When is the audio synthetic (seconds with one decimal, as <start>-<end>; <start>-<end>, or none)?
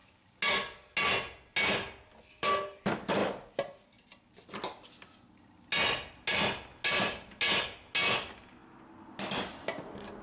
none